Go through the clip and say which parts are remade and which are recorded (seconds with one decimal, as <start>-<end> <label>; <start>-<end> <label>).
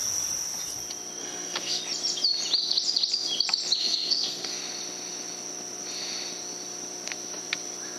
0.0-1.2 recorded; 1.2-1.8 remade; 1.8-3.8 recorded; 3.8-4.6 remade; 4.6-8.0 recorded